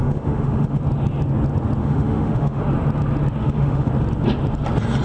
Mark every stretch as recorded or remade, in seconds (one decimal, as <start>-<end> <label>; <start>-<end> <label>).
0.0-0.8 remade; 0.8-1.8 recorded; 1.8-2.6 remade; 2.6-3.4 recorded; 3.4-3.9 remade; 3.9-5.0 recorded

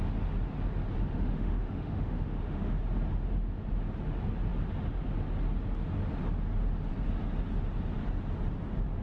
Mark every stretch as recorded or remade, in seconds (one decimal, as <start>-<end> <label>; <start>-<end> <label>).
0.0-1.0 recorded; 1.0-2.8 remade; 2.8-9.0 recorded

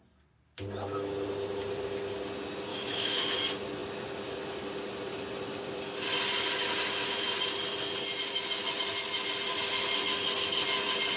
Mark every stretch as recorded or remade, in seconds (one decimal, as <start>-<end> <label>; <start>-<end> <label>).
0.0-2.7 recorded; 2.7-3.2 remade; 3.2-11.2 recorded

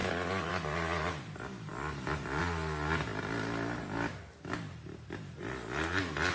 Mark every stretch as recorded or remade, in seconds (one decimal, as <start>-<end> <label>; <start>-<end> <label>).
0.0-6.3 recorded

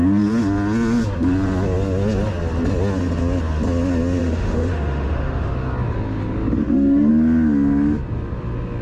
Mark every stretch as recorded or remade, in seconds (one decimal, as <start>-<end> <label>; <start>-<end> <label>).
0.0-4.2 recorded; 4.2-5.5 remade; 5.5-6.6 recorded; 6.6-7.1 remade; 7.1-8.8 recorded

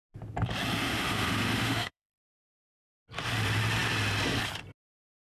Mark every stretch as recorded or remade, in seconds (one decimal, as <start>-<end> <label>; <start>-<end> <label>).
0.0-0.9 recorded; 0.9-2.2 remade; 2.2-5.3 recorded

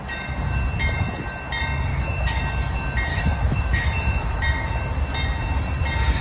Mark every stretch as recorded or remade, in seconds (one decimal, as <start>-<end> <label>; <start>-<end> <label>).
0.0-1.9 recorded; 1.9-2.4 remade; 2.4-3.1 recorded; 3.1-4.4 remade; 4.4-6.2 recorded